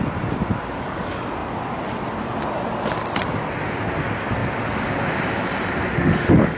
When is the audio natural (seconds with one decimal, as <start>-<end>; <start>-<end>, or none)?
0.0-5.9